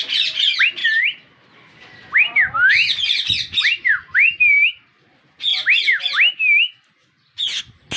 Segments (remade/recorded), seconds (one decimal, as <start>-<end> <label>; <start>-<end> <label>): 0.0-2.9 recorded; 2.9-4.3 remade; 4.3-8.0 recorded